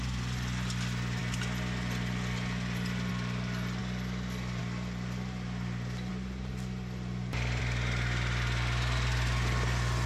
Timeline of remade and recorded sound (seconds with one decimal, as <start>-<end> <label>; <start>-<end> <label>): 0.0-10.1 recorded

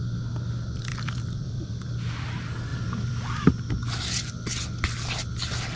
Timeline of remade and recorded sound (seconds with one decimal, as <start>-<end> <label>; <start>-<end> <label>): 0.0-0.9 recorded; 0.9-1.7 remade; 1.7-2.7 recorded; 2.7-3.5 remade; 3.5-5.8 recorded

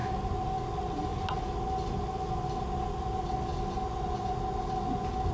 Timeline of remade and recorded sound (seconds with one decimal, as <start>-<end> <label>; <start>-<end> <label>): 0.0-5.3 recorded

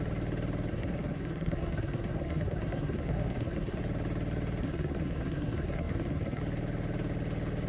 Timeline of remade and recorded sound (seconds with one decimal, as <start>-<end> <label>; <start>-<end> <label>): 0.0-0.7 recorded; 0.7-3.8 remade; 3.8-4.6 recorded; 4.6-6.4 remade; 6.4-7.7 recorded

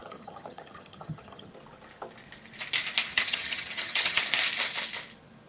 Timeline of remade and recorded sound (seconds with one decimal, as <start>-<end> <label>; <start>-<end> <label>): 0.0-1.5 remade; 1.5-3.1 recorded; 3.1-4.2 remade; 4.2-5.5 recorded